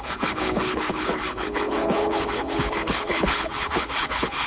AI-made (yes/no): yes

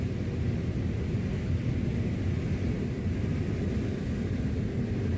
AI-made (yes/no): no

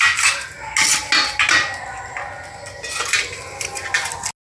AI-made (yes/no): no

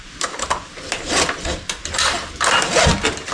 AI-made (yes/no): no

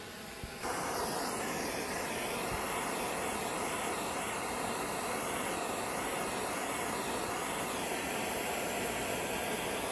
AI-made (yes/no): no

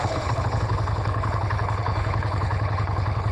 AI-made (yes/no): yes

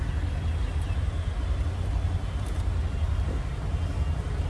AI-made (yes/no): no